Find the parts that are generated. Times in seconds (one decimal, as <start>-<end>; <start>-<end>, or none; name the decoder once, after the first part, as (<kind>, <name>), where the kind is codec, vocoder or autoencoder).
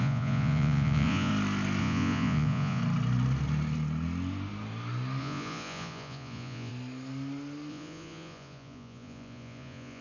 0.0-1.3 (vocoder, Vocos); 1.8-2.8; 5.2-6.7; 7.7-10.0